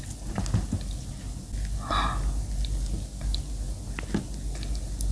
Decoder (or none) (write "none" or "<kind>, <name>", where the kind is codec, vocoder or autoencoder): none